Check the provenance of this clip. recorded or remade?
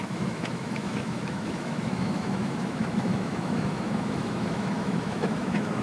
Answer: remade